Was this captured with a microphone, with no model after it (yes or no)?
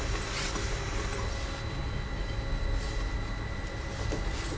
yes